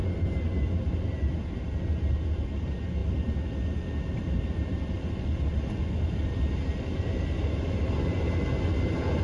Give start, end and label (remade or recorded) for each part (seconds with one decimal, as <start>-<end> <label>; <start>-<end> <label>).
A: 0.0-9.2 recorded